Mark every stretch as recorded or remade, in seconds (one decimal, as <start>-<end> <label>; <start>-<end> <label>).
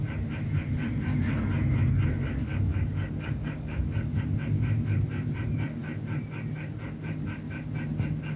0.0-2.4 recorded; 2.4-4.2 remade; 4.2-8.4 recorded